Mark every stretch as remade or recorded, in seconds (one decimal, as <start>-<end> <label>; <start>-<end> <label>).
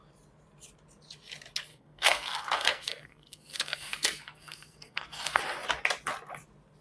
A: 0.0-1.7 recorded; 1.7-5.4 remade; 5.4-6.8 recorded